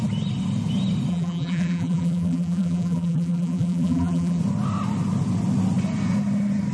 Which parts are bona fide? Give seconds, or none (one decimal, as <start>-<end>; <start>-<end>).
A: 0.0-1.1; 4.4-6.7